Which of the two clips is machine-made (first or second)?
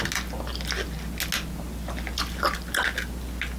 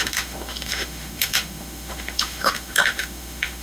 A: second